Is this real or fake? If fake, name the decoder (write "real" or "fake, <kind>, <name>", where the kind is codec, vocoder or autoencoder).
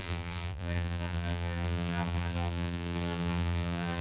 fake, vocoder, BigVGAN v2